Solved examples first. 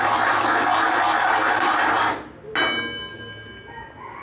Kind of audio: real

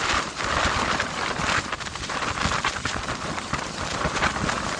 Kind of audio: real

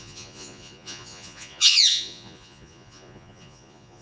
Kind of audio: fake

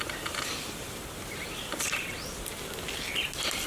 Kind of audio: real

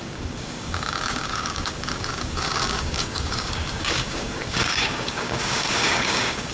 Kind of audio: fake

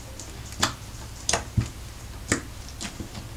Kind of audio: real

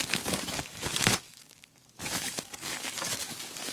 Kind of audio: fake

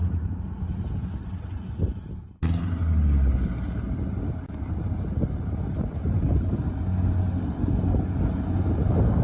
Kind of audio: real